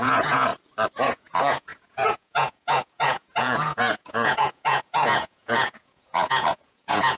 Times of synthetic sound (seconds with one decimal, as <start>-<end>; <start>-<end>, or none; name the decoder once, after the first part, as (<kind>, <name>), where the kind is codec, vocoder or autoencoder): 0.0-0.5 (vocoder, Vocos); 1.0-7.2